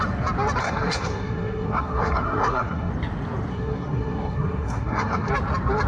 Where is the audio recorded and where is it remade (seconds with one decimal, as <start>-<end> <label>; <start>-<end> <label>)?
0.0-0.6 recorded; 0.6-2.9 remade; 2.9-3.5 recorded; 3.5-5.3 remade; 5.3-5.9 recorded